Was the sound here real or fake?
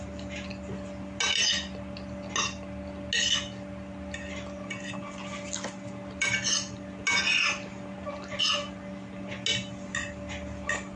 real